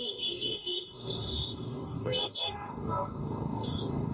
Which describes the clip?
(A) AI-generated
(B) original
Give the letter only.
A